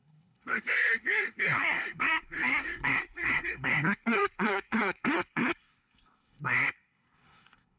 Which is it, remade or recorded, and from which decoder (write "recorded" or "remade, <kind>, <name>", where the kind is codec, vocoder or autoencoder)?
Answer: remade, codec, SNAC